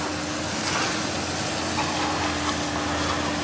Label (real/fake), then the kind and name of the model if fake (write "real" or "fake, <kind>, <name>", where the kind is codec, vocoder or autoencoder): real